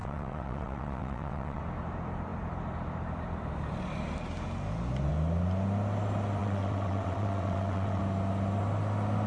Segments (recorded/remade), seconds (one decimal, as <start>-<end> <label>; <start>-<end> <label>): 0.0-1.6 remade; 1.6-6.4 recorded; 6.4-8.0 remade; 8.0-9.3 recorded